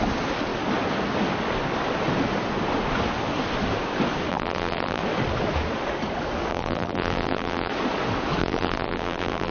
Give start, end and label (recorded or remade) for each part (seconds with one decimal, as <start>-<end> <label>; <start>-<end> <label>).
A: 0.0-4.3 recorded; 4.3-5.0 remade; 5.0-6.5 recorded; 6.5-7.7 remade; 7.7-8.4 recorded; 8.4-9.5 remade